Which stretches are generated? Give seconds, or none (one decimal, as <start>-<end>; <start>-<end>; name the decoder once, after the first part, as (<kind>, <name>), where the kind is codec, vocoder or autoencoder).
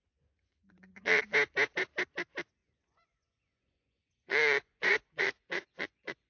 0.0-1.2 (vocoder, Vocos); 2.6-6.3